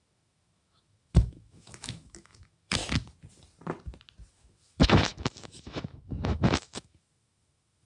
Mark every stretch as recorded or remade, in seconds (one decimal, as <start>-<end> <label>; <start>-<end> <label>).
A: 0.0-2.8 remade; 2.8-4.3 recorded; 4.3-7.8 remade